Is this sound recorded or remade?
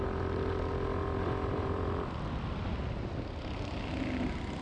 recorded